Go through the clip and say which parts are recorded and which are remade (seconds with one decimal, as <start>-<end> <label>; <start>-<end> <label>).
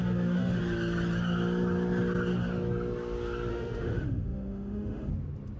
0.0-0.6 remade; 0.6-3.5 recorded; 3.5-5.1 remade; 5.1-5.6 recorded